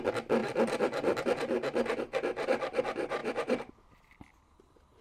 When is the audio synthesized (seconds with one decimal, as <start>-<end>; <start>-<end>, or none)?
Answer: 0.4-1.2; 3.2-3.7